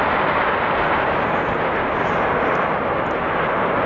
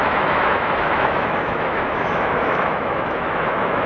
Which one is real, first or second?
first